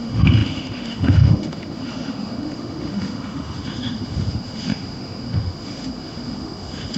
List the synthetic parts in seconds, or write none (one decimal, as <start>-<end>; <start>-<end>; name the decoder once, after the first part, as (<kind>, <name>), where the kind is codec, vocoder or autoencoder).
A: 0.0-7.0 (autoencoder, DAC-VAE)